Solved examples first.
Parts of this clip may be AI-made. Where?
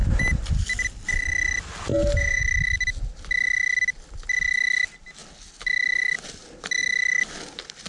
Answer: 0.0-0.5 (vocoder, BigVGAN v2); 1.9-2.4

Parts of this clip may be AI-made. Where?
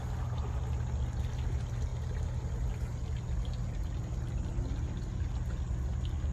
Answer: none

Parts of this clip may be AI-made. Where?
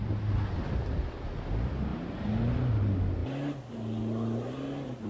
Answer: none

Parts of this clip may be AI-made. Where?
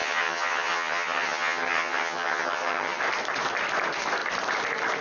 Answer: 0.0-3.0 (vocoder, HiFi-GAN)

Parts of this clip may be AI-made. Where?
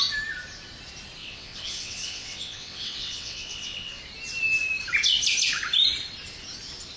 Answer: 1.2-4.0 (vocoder, WaveNeXt)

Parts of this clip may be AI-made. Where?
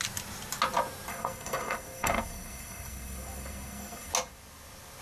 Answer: 1.1-4.1 (codec, SNAC)